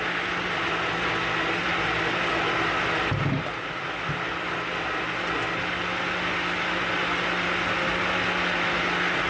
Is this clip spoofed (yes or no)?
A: no